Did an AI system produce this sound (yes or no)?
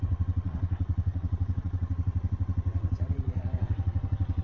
yes